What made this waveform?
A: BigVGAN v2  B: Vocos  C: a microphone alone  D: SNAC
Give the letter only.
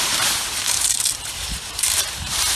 A